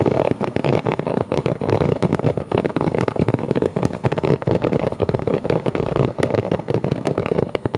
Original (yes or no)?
no